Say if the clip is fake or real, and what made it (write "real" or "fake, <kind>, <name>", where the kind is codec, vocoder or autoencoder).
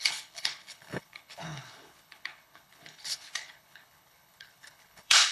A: fake, codec, HILCodec